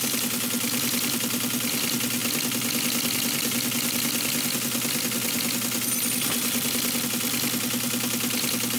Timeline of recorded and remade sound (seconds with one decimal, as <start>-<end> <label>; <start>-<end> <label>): 0.0-8.8 recorded